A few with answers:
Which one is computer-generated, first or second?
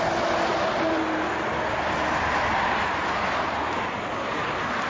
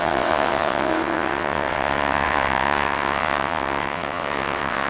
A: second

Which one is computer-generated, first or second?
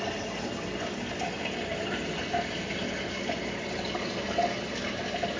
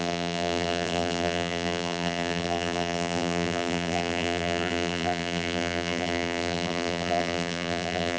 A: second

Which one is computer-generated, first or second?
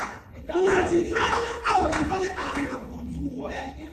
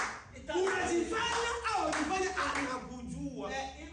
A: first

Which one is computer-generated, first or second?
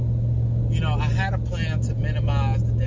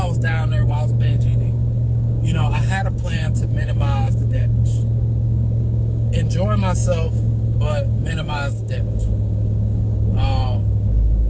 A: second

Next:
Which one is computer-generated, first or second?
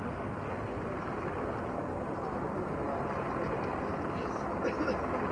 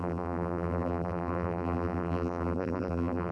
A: second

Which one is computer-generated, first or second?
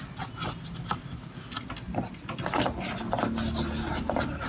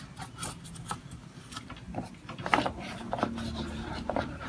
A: second